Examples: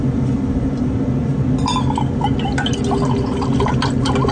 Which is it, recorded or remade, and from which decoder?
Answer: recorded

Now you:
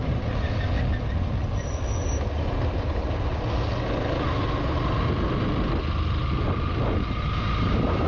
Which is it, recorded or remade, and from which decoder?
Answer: recorded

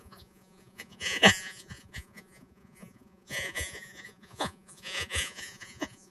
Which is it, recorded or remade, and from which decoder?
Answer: remade, vocoder, Vocos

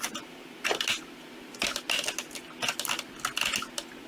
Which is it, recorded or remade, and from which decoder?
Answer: recorded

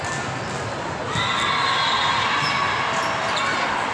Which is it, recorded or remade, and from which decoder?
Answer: recorded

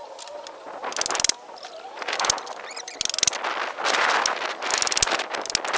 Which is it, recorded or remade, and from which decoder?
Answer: recorded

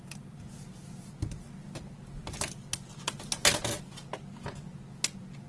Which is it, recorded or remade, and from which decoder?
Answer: recorded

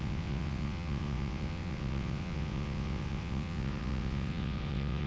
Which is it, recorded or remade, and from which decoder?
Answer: remade, vocoder, WaveNeXt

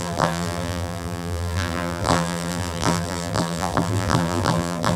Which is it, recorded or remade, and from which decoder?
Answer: remade, vocoder, BigVGAN v2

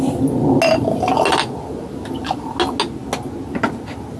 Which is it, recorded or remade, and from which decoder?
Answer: recorded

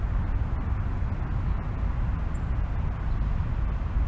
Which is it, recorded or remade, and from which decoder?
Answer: recorded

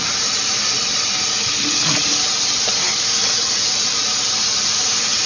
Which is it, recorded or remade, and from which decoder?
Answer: recorded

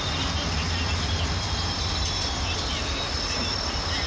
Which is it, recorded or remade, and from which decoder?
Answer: recorded